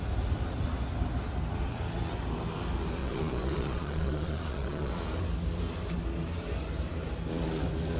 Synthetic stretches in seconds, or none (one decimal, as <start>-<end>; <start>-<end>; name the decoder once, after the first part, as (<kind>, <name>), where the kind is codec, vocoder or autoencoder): 3.0-4.9 (vocoder, Vocos)